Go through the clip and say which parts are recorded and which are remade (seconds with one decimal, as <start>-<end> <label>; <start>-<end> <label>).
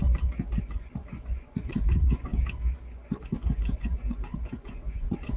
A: 0.0-0.6 recorded; 0.6-2.3 remade; 2.3-2.9 recorded; 2.9-5.4 remade